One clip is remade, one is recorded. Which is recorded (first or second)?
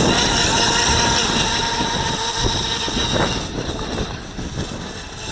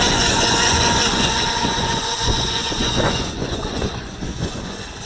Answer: first